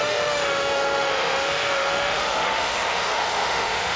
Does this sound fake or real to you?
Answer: fake